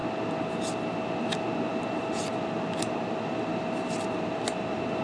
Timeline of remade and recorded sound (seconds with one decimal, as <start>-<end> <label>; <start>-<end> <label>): 0.0-1.7 recorded; 1.7-5.0 remade